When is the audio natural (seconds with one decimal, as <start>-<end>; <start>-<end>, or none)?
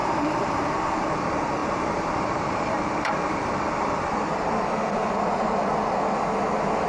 0.6-1.6; 3.7-5.0; 5.6-6.9